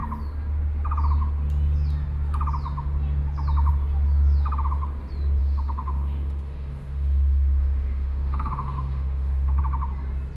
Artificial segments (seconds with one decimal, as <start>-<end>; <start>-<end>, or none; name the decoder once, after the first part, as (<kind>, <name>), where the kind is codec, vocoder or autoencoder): 5.4-9.6 (autoencoder, DAC-VAE)